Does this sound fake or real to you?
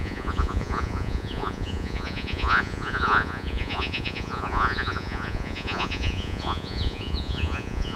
fake